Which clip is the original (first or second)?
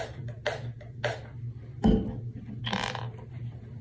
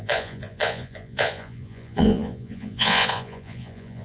first